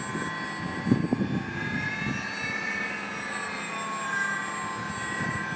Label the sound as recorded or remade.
recorded